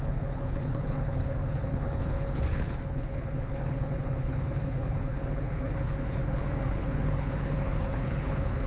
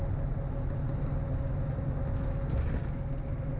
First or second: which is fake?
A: first